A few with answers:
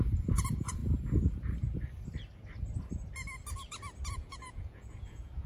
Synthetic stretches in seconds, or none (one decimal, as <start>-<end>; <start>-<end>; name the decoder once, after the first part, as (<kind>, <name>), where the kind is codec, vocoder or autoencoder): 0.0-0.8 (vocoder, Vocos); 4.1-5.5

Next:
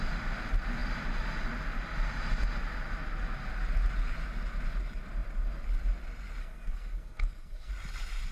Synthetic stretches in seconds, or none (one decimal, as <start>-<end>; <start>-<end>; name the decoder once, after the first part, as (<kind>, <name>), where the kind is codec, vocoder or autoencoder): 6.4-7.7 (codec, SNAC)

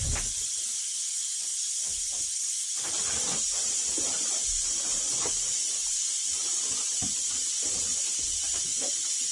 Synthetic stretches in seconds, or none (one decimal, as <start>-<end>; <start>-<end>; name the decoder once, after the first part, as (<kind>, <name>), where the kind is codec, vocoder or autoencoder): none